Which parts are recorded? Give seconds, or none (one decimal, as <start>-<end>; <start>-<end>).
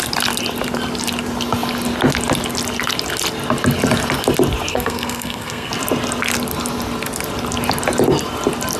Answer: 0.0-4.7; 5.7-8.8